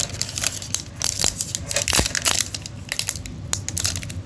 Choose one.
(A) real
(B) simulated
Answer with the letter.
A